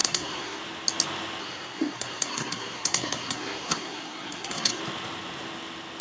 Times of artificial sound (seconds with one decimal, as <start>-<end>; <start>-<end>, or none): 0.0-0.6; 1.4-4.8